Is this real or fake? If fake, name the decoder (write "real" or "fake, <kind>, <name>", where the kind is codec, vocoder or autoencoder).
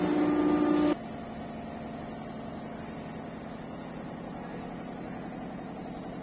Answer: real